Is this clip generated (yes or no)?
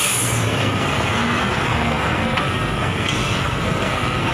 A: yes